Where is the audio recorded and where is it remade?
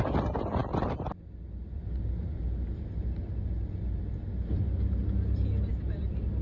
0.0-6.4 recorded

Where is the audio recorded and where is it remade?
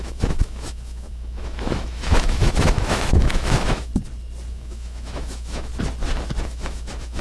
0.0-3.9 remade; 3.9-4.5 recorded; 4.5-5.7 remade; 5.7-6.4 recorded; 6.4-7.2 remade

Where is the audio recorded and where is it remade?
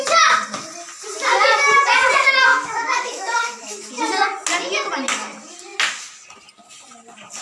0.0-2.5 recorded; 2.5-3.9 remade; 3.9-7.4 recorded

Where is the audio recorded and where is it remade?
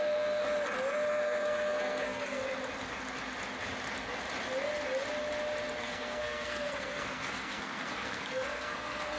0.0-0.4 remade; 0.4-1.1 recorded; 1.1-2.4 remade; 2.4-5.8 recorded; 5.8-9.2 remade